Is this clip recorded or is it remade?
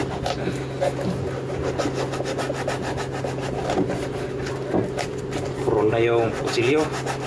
recorded